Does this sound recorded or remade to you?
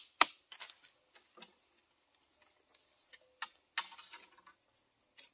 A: recorded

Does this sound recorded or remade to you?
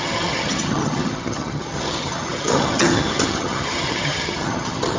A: remade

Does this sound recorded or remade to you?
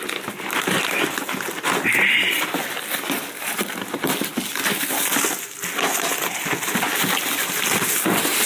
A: recorded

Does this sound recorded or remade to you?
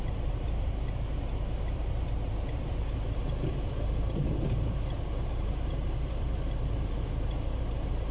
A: remade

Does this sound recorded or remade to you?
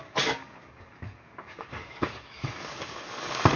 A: remade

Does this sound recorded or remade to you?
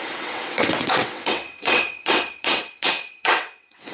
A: remade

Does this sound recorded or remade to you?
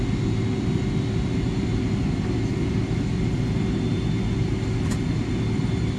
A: recorded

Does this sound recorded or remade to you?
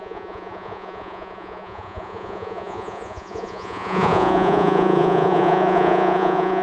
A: remade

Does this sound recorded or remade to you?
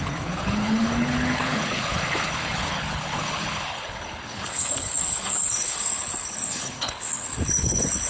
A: remade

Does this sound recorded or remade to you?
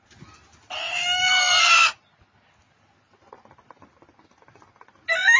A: recorded